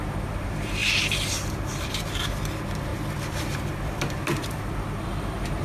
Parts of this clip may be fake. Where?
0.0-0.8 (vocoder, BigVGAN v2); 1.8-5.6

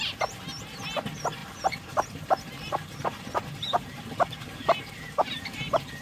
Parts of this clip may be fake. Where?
1.4-4.9 (vocoder, BigVGAN v2)